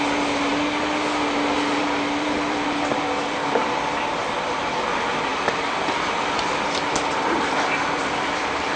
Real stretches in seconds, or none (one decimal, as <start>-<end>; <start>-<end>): none